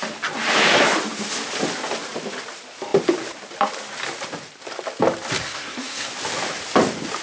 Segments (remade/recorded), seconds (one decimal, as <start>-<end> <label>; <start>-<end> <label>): 0.0-5.4 recorded; 5.4-6.1 remade; 6.1-7.2 recorded

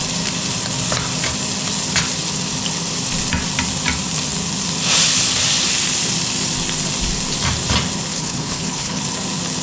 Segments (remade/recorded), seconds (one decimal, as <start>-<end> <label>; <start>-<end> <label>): 0.0-8.1 recorded; 8.1-9.0 remade; 9.0-9.6 recorded

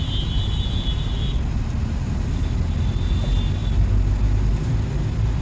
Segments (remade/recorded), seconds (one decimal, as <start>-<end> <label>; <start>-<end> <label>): 0.0-5.4 recorded

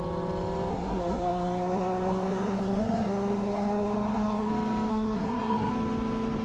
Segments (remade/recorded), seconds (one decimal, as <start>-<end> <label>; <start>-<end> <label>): 0.0-0.7 recorded; 0.7-4.5 remade; 4.5-4.9 recorded; 4.9-5.7 remade; 5.7-6.4 recorded